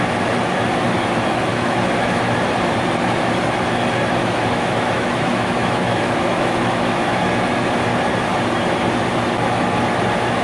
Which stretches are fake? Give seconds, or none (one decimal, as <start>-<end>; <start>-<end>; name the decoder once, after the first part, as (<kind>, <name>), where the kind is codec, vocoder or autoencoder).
1.5-2.2 (autoencoder, DAC-VAE); 4.2-7.2